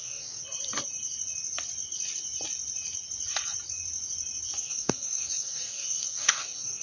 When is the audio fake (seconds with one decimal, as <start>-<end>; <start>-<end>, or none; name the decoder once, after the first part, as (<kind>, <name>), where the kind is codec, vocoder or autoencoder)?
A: 0.0-0.4 (codec, DAC); 4.5-6.8